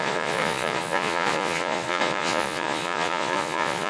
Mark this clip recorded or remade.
remade